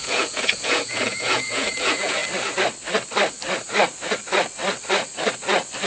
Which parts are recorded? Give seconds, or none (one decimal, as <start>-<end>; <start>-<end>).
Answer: 2.2-5.9